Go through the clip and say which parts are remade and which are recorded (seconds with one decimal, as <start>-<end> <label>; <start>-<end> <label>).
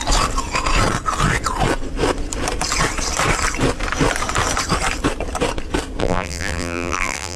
0.0-6.0 recorded; 6.0-7.4 remade